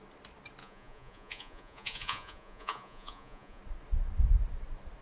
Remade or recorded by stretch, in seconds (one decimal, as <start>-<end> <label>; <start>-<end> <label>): 0.0-0.6 recorded; 0.6-3.6 remade; 3.6-5.0 recorded